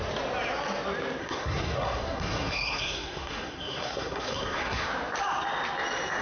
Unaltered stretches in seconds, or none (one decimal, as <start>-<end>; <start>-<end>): 0.0-1.2; 4.9-6.2